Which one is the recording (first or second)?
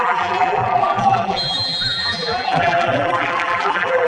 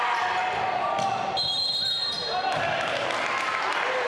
second